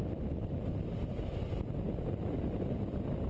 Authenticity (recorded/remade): recorded